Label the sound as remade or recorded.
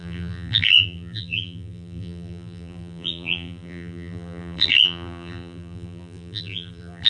remade